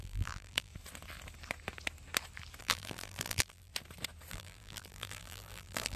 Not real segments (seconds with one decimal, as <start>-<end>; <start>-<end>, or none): 0.0-0.7; 2.6-3.7; 4.3-6.0